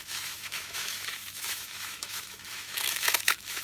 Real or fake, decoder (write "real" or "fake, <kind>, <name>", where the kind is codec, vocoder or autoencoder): fake, autoencoder, DAC-VAE